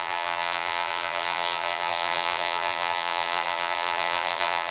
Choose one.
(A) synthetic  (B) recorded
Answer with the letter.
A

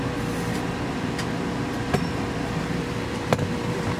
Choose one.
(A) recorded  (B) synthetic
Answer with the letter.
B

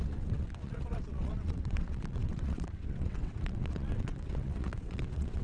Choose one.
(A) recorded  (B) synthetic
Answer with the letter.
B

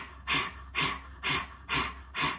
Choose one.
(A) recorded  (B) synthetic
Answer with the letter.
A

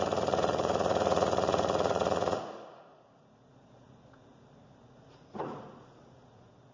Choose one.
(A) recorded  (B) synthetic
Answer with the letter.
B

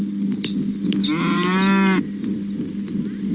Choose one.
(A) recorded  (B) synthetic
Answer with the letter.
A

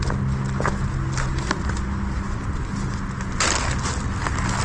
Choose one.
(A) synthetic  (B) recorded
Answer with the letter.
B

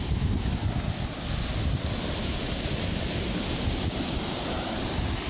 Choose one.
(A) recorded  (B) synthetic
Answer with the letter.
A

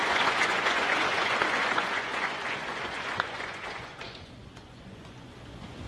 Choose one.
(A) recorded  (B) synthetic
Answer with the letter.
B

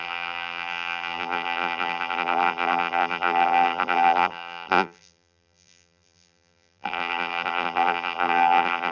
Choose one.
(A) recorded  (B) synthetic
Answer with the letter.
B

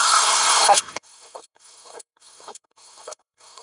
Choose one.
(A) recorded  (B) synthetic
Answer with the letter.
B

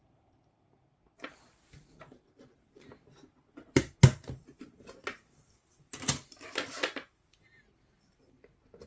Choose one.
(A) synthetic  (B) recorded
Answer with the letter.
B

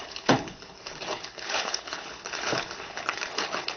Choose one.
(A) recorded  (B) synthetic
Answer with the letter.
B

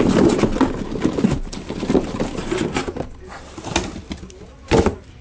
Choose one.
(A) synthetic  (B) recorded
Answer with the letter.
B